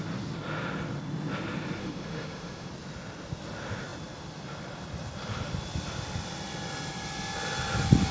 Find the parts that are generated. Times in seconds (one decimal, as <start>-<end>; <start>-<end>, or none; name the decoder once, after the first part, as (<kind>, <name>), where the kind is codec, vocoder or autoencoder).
1.8-2.7 (autoencoder, DAC-VAE)